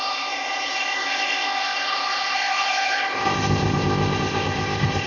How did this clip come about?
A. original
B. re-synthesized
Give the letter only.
B